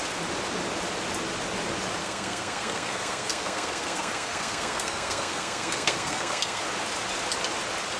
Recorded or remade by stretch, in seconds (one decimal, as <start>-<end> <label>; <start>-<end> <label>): 0.0-2.0 recorded; 2.0-6.6 remade; 6.6-8.0 recorded